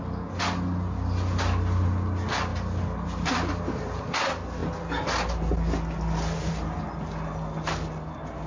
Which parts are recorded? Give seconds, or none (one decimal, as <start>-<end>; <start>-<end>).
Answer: 0.0-2.5; 4.0-8.5